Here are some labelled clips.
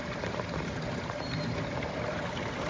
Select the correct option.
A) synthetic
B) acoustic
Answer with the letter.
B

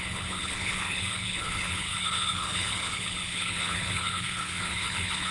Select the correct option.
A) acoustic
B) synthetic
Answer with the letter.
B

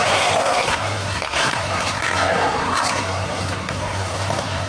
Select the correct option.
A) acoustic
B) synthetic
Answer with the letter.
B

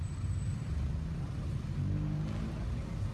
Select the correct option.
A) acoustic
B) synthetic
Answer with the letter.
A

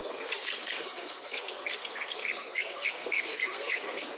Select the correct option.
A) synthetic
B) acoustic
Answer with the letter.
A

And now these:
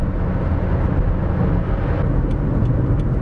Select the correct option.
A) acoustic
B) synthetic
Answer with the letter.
A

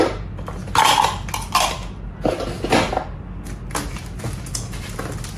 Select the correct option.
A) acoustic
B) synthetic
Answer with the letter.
A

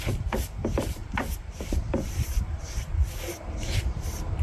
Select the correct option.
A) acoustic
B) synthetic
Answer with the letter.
B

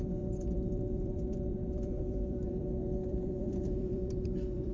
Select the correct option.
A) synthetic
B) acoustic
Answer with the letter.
A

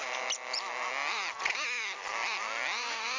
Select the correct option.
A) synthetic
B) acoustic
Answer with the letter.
A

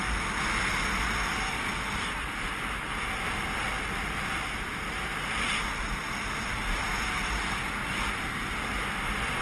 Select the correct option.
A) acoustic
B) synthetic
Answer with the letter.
A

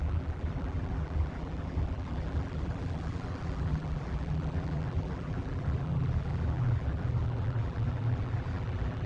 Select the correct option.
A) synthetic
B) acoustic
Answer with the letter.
A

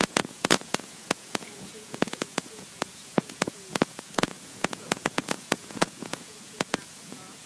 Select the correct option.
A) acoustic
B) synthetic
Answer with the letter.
B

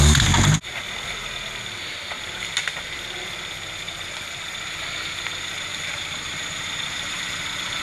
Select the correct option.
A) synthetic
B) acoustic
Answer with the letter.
B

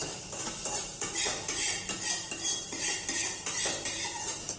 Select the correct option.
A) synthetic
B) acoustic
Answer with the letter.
B